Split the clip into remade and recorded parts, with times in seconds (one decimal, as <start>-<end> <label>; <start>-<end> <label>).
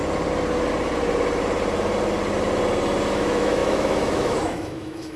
0.0-3.1 recorded; 3.1-5.2 remade